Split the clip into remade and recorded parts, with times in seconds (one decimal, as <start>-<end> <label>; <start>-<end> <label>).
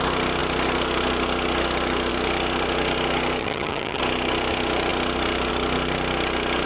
0.0-3.4 recorded; 3.4-4.0 remade; 4.0-6.7 recorded